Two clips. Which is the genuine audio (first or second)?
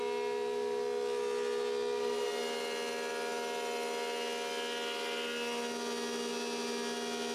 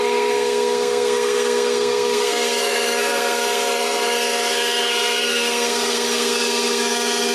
first